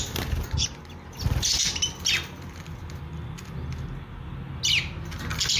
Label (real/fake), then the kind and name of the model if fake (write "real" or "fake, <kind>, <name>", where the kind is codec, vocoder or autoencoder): real